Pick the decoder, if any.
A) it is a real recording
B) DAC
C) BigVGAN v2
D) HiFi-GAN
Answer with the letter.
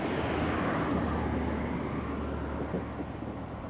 A